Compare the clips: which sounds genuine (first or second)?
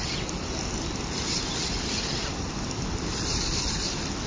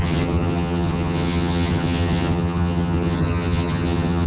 first